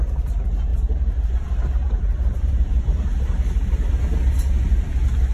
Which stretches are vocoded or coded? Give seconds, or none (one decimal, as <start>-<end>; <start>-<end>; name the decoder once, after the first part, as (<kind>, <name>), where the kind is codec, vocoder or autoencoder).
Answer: 0.7-3.9 (vocoder, BigVGAN v2)